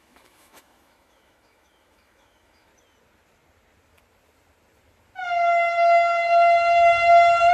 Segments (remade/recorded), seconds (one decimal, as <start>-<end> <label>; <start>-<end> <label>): 0.0-2.7 remade; 2.7-7.5 recorded